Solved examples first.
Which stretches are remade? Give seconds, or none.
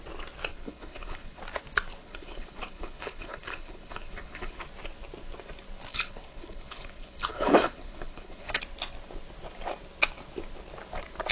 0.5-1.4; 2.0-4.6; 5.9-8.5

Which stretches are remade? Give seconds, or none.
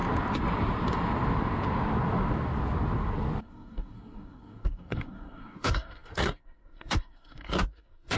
3.4-8.2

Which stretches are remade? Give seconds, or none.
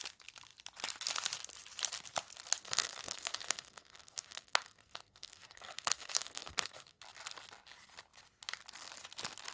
2.6-7.0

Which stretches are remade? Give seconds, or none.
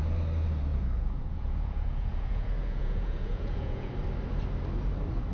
0.7-3.9